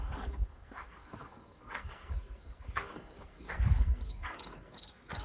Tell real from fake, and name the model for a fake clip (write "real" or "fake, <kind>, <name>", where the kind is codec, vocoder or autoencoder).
fake, codec, SNAC